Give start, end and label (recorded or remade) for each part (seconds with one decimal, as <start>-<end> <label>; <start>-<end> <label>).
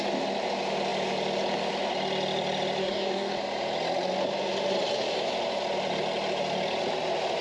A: 0.0-2.8 recorded; 2.8-3.3 remade; 3.3-7.4 recorded